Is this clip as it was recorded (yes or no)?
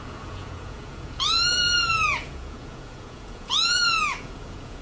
no